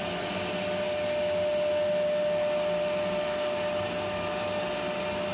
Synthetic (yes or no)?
no